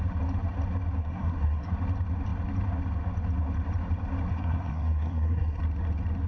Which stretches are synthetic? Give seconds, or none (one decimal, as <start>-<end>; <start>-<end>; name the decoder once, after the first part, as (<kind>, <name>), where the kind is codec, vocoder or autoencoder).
1.0-1.7 (codec, SNAC); 4.3-5.6